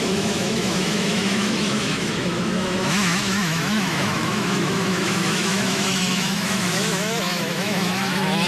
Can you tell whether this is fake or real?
fake